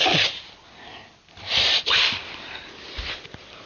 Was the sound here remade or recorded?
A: recorded